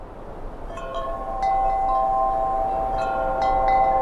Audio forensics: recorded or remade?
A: recorded